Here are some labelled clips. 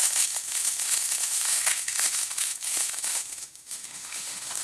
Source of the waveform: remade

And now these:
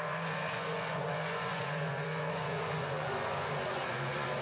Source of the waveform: remade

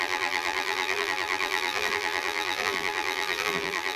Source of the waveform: remade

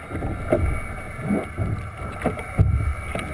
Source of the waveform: recorded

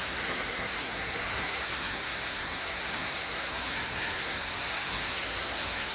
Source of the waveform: remade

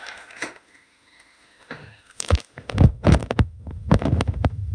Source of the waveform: remade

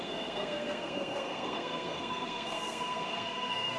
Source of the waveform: remade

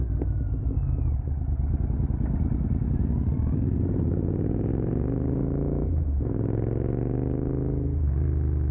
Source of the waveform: recorded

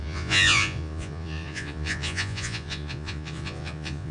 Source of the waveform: remade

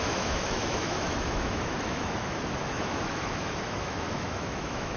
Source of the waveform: remade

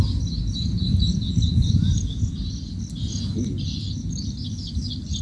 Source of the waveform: recorded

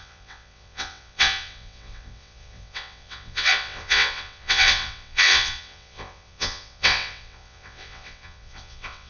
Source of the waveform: remade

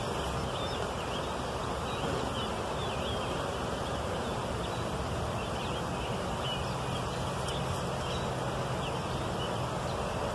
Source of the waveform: recorded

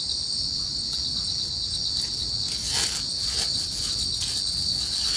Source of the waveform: recorded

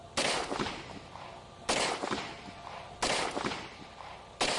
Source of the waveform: recorded